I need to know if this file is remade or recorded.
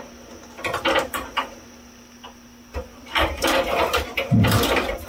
remade